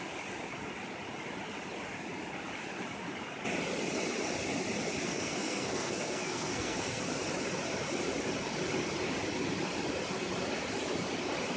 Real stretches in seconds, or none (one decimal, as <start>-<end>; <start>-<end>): 0.0-5.0; 7.0-11.6